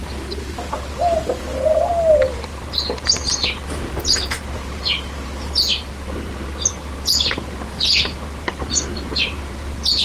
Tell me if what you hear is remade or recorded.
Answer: recorded